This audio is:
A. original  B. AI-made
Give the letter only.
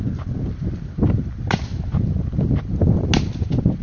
A